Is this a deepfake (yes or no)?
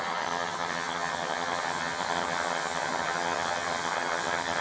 yes